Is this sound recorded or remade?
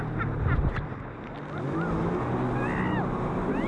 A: recorded